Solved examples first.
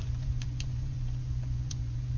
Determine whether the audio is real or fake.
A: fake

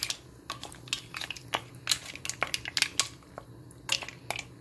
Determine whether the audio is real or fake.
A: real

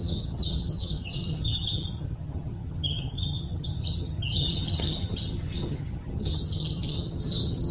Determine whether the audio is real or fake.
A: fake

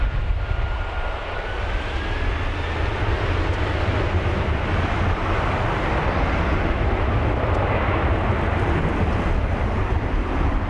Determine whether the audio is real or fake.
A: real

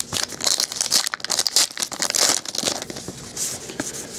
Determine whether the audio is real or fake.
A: real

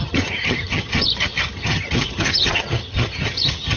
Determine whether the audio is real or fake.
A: fake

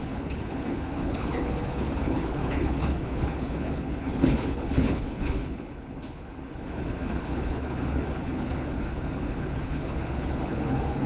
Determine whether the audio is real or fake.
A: fake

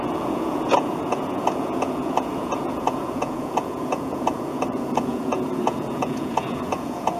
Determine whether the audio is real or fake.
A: fake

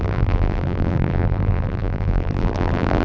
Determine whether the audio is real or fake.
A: fake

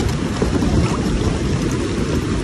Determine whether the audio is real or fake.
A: fake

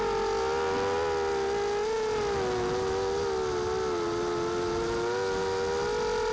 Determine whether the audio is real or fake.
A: real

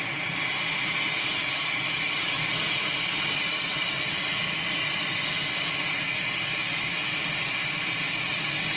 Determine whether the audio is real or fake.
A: real